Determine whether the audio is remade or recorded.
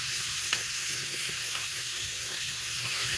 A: remade